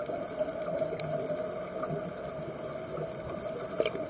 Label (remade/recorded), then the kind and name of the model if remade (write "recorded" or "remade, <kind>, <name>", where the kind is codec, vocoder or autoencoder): recorded